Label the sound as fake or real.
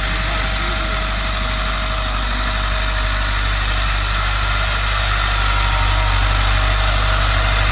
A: real